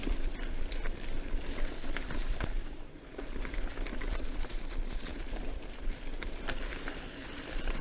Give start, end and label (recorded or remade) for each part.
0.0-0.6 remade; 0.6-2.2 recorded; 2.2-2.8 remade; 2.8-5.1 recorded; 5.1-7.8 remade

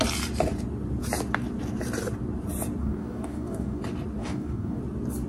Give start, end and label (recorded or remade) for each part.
0.0-2.8 recorded; 2.8-3.8 remade; 3.8-4.2 recorded; 4.2-4.8 remade; 4.8-5.3 recorded

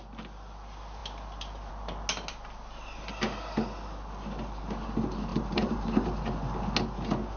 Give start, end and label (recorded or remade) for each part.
0.0-5.3 recorded; 5.3-6.2 remade; 6.2-7.4 recorded

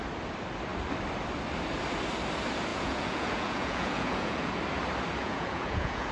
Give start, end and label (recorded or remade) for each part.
0.0-2.7 recorded; 2.7-4.5 remade; 4.5-5.2 recorded; 5.2-6.1 remade

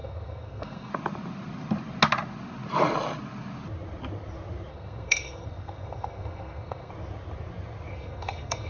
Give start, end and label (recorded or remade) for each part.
0.0-0.9 remade; 0.9-4.7 recorded; 4.7-6.9 remade; 6.9-7.9 recorded; 7.9-8.7 remade